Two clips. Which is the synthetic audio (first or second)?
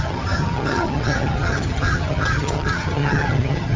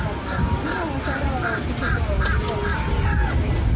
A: first